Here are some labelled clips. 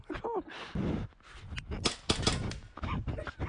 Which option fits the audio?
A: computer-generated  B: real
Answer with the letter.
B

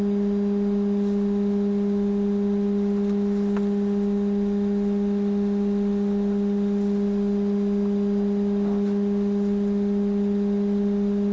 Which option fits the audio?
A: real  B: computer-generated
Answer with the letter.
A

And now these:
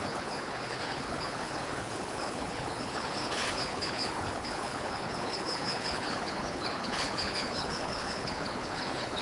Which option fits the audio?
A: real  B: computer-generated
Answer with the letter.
B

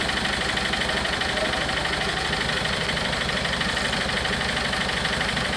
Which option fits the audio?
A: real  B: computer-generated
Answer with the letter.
B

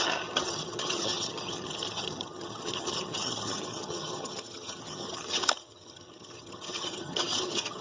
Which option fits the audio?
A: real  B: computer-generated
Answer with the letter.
B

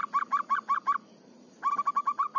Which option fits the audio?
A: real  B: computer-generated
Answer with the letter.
A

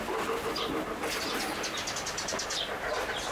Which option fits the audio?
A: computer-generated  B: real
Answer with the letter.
B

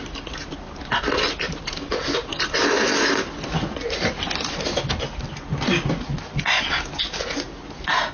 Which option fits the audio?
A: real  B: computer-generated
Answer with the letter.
A